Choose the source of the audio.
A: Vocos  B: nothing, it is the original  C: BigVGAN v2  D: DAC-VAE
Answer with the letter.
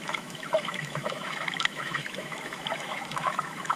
D